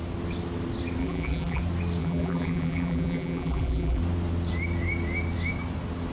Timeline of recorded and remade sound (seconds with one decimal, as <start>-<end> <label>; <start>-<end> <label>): 0.0-1.0 recorded; 1.0-1.6 remade; 1.6-2.0 recorded; 2.0-4.0 remade; 4.0-6.1 recorded